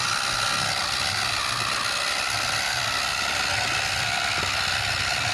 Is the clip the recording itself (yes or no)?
yes